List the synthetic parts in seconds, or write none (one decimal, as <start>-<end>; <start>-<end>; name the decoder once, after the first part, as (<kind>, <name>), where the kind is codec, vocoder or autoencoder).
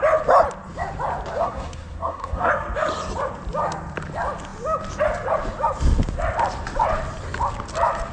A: 1.4-2.5 (codec, SNAC)